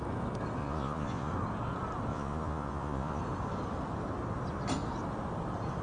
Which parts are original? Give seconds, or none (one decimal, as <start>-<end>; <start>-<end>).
0.0-0.6; 1.3-2.1; 3.2-5.8